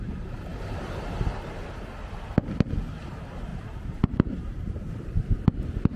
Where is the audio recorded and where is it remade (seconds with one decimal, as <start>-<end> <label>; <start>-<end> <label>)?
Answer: 0.0-0.5 recorded; 0.5-1.7 remade; 1.7-3.5 recorded; 3.5-4.9 remade; 4.9-6.0 recorded